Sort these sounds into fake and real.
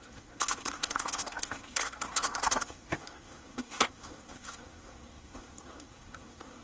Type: fake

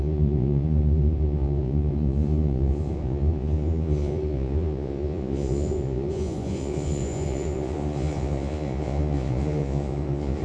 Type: fake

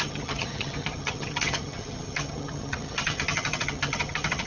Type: fake